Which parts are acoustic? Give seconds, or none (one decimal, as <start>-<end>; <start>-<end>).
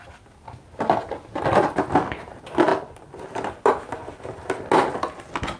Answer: 0.0-5.6